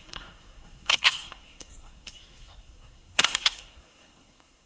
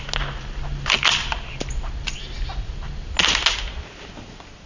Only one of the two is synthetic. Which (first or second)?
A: first